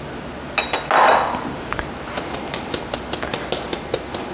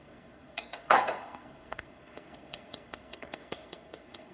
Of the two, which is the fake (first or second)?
second